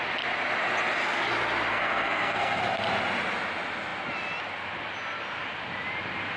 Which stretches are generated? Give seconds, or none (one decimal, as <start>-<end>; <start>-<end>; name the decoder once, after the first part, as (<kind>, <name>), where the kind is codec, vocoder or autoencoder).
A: 1.7-2.6 (codec, SNAC)